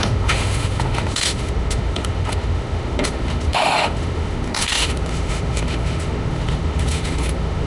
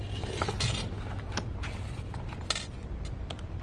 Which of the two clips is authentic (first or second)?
second